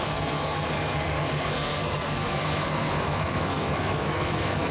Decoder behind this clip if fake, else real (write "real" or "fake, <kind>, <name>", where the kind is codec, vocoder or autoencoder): fake, codec, SNAC